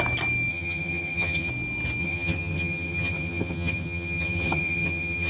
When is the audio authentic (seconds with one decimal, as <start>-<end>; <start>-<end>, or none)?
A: 0.0-0.5; 1.5-2.0